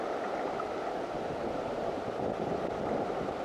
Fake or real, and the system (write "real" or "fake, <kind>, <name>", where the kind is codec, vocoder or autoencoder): real